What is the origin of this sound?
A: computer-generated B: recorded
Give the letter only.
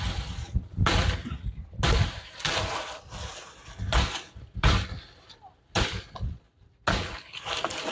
B